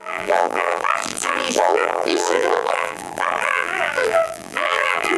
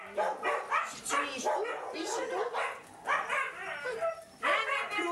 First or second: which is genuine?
second